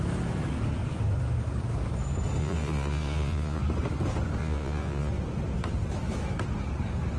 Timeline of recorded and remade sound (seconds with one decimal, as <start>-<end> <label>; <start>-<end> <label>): 0.0-2.4 recorded; 2.4-3.6 remade; 3.6-4.4 recorded; 4.4-5.1 remade; 5.1-7.2 recorded